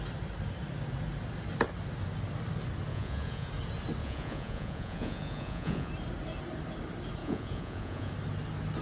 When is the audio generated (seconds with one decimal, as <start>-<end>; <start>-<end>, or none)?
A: 2.9-3.5; 4.0-5.9; 7.2-8.1